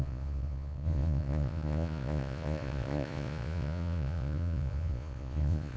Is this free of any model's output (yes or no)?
no